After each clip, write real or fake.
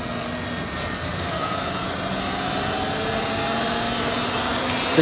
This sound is real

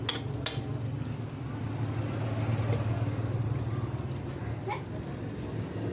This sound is real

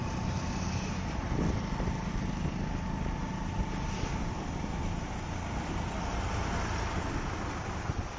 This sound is real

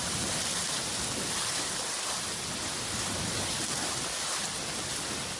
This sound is real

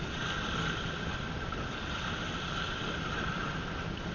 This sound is real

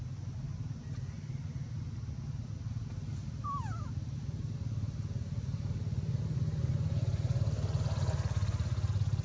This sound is real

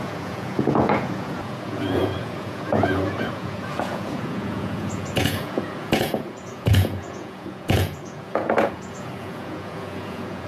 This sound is fake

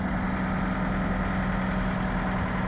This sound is real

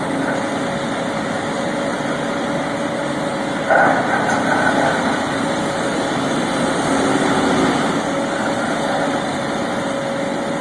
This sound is real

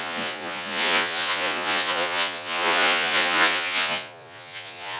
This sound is fake